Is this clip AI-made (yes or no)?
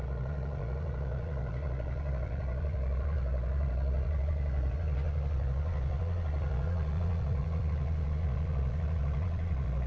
yes